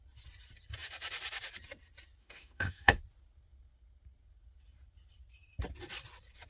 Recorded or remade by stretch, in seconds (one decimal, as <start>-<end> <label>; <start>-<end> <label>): 0.0-2.2 recorded; 2.2-3.0 remade; 3.0-6.5 recorded